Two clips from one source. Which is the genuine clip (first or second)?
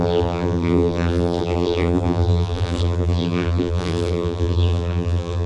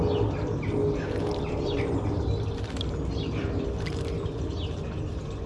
second